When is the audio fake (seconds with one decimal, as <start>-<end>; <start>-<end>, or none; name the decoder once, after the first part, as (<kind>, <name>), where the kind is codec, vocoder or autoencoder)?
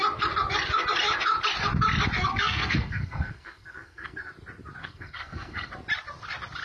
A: 2.3-4.3 (codec, SNAC); 4.8-5.7